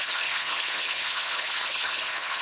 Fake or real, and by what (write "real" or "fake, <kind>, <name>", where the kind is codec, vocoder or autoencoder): fake, codec, HILCodec